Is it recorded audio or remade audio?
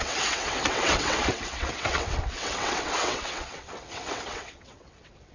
remade